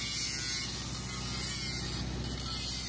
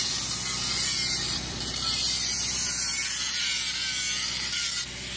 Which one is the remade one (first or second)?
second